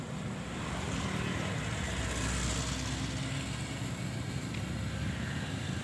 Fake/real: real